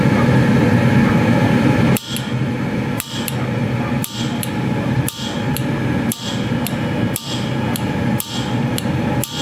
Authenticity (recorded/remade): recorded